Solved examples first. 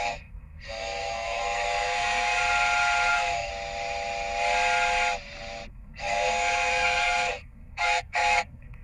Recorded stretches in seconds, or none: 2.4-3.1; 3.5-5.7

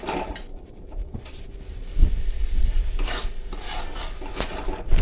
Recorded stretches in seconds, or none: 0.0-0.5; 1.4-2.0; 2.8-5.0